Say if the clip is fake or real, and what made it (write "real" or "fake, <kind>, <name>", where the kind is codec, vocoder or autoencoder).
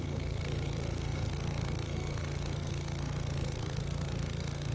fake, codec, SNAC